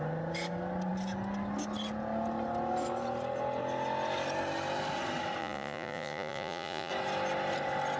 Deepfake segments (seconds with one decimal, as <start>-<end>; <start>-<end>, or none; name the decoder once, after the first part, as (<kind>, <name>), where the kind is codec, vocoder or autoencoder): 5.4-6.9 (vocoder, Vocos)